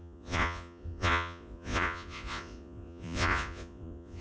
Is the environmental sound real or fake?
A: fake